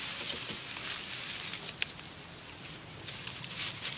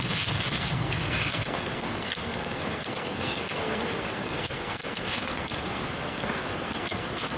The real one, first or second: first